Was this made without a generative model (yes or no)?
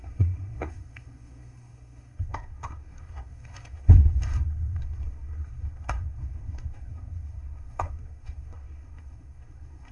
no